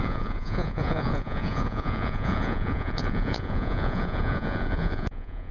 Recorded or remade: remade